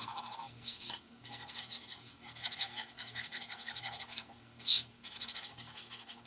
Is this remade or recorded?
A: remade